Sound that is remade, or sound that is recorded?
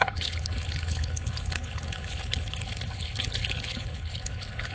remade